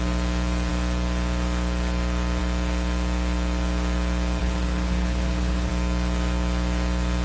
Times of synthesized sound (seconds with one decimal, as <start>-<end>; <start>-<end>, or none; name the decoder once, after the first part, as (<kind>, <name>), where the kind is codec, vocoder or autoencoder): 4.4-5.7 (codec, HILCodec)